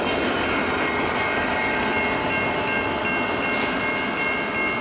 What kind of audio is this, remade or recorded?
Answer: recorded